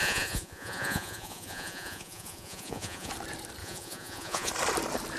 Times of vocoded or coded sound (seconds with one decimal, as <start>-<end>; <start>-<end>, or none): 0.0-3.1; 3.6-4.5